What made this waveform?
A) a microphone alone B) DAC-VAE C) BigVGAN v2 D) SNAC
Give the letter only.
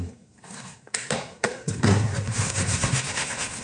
D